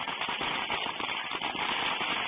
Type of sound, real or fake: real